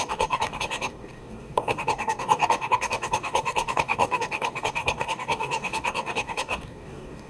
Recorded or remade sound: remade